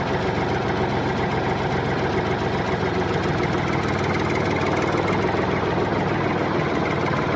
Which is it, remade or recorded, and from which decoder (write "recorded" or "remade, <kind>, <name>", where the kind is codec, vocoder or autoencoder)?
recorded